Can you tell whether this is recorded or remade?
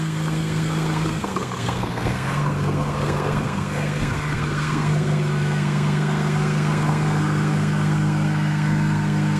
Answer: remade